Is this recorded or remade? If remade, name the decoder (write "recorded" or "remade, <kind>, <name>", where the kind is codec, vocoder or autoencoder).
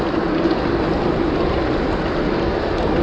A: recorded